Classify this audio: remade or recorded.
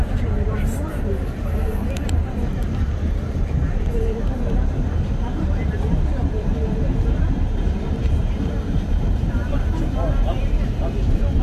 remade